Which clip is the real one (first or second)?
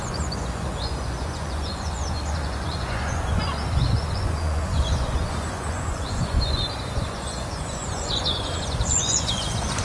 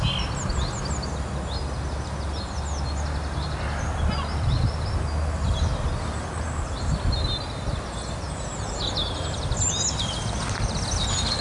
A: second